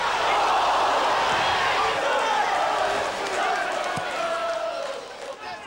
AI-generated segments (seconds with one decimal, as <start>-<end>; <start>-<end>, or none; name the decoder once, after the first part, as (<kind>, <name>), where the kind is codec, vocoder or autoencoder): none